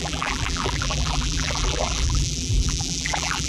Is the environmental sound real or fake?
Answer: fake